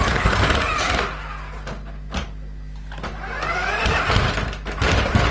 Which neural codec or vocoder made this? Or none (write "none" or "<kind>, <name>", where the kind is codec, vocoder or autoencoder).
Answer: none